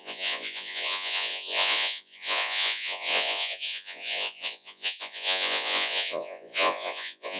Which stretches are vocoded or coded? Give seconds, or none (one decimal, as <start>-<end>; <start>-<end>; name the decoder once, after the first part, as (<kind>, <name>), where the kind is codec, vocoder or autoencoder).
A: 0.0-7.4 (vocoder, Vocos)